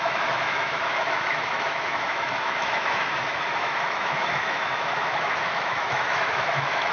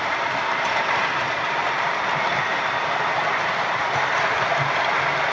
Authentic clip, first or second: second